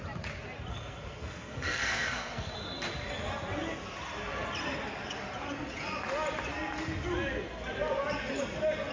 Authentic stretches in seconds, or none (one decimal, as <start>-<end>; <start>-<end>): 0.0-0.7; 2.5-8.9